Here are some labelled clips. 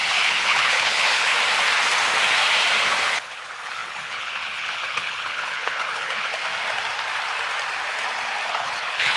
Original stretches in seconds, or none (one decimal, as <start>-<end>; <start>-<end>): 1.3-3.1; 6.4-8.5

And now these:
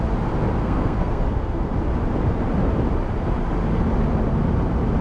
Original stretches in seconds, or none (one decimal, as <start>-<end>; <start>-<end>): 0.0-0.6; 1.2-5.0

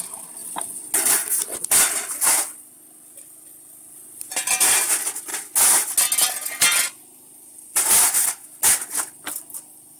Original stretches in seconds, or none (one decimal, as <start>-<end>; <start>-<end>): 0.0-0.4; 1.1-10.0

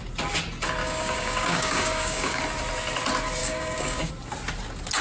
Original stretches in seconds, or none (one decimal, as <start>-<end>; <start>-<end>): 0.0-0.8; 2.4-3.4; 4.1-5.0

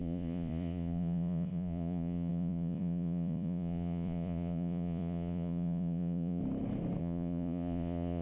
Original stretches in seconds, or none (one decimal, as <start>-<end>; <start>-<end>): 6.4-7.0

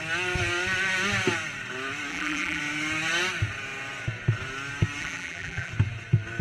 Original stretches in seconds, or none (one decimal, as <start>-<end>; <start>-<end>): 0.0-2.1; 2.6-5.0; 5.7-6.4

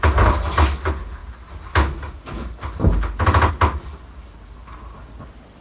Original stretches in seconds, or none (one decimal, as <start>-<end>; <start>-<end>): 0.0-5.6

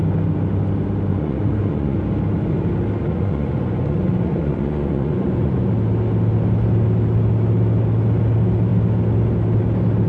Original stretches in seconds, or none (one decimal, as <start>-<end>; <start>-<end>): 0.0-1.1; 2.0-3.0; 5.7-10.1